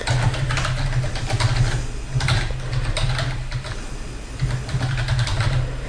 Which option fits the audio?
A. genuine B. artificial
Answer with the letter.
A